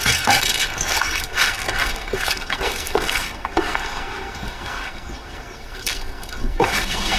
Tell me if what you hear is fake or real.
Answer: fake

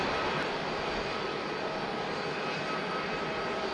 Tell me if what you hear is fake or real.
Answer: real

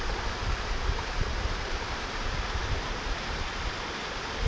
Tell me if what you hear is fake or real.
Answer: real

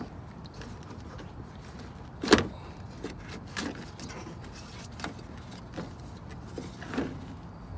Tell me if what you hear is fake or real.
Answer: real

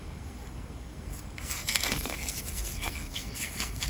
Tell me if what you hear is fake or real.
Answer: fake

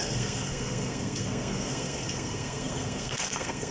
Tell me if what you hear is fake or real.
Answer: fake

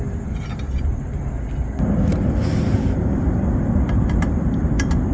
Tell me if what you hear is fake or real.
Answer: real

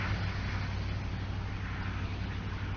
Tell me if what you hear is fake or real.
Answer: real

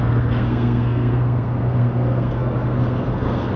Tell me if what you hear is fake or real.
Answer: fake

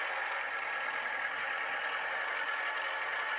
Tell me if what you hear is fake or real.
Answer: real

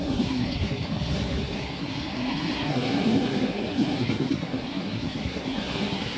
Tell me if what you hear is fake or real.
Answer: fake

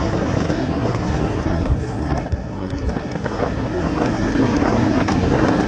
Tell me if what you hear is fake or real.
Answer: fake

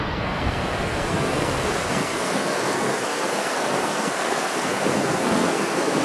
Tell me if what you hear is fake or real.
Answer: fake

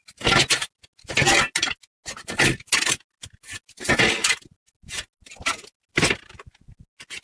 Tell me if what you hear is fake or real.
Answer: real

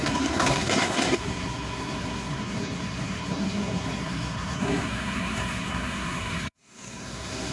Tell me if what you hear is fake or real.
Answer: fake